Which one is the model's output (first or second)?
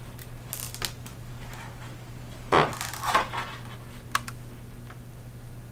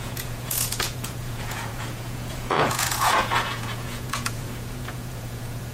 second